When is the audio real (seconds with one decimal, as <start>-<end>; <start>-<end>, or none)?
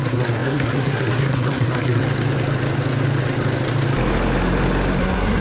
2.0-5.0